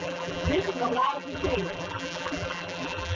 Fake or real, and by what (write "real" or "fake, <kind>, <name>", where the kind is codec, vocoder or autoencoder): fake, vocoder, BigVGAN v2